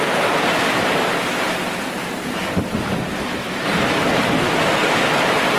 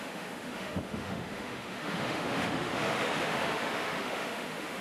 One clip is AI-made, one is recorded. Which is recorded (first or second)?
first